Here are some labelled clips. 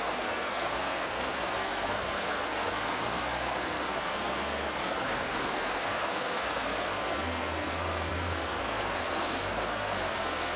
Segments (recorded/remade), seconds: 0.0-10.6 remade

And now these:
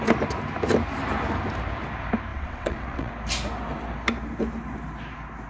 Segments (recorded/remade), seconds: 0.0-2.3 recorded; 2.3-3.1 remade; 3.1-5.5 recorded

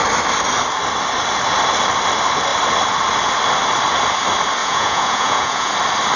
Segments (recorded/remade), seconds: 0.0-4.6 recorded; 4.6-5.7 remade; 5.7-6.2 recorded